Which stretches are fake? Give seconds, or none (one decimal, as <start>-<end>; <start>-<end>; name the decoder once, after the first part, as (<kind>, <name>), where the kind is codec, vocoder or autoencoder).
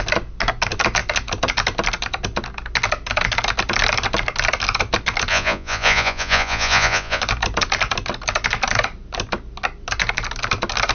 5.3-7.2 (vocoder, Vocos)